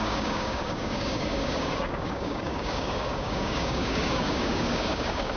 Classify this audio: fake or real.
fake